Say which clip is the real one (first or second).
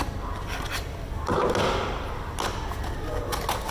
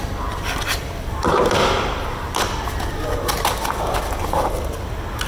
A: first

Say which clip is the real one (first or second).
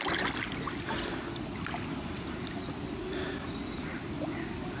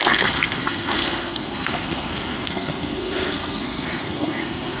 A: first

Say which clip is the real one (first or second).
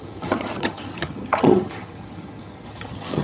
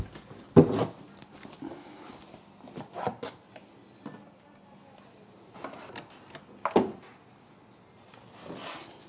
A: second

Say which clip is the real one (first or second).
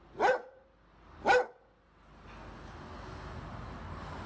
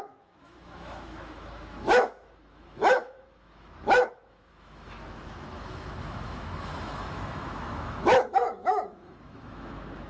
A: first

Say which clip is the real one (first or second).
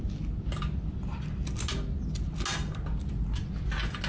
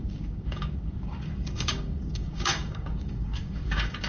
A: first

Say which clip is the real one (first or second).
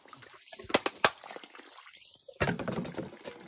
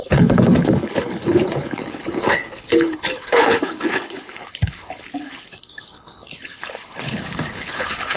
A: first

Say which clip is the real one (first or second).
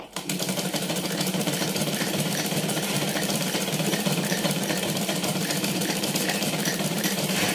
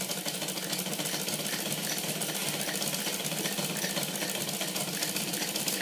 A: second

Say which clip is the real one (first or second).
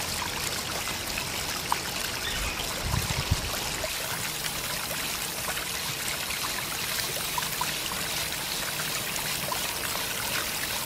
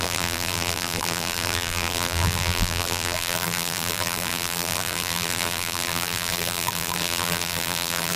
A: first